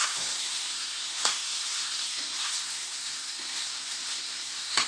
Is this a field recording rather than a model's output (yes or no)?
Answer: no